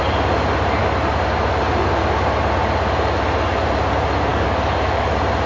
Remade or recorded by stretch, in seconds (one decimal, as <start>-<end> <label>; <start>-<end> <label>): 0.0-4.3 recorded; 4.3-5.1 remade; 5.1-5.5 recorded